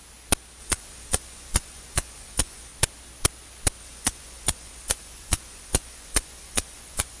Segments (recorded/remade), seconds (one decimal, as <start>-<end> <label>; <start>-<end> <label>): 0.0-0.6 recorded; 0.6-2.7 remade; 2.7-3.8 recorded; 3.8-7.2 remade